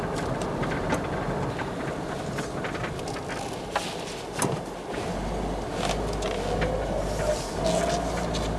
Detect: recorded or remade recorded